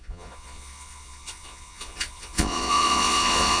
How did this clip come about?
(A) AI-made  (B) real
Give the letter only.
A